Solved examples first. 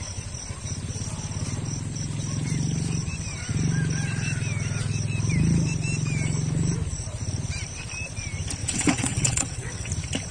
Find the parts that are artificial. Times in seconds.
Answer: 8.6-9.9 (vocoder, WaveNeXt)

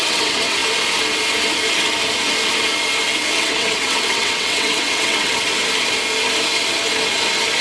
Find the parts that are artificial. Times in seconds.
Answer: 0.0-0.6 (vocoder, WaveNeXt); 3.3-5.3